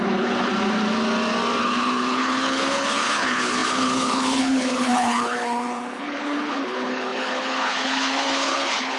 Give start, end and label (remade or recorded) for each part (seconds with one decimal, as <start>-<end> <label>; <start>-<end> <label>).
0.0-0.5 remade; 0.5-1.6 recorded; 1.6-9.0 remade